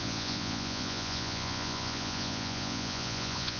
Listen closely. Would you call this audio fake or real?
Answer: fake